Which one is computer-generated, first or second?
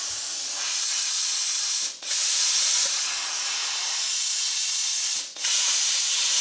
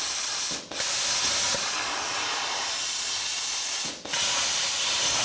first